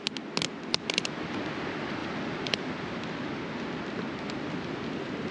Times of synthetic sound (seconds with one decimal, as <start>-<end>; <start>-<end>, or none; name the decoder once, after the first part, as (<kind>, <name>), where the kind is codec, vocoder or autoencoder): none